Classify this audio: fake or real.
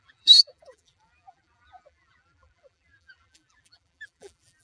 fake